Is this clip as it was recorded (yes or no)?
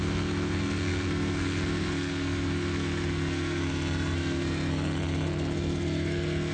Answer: no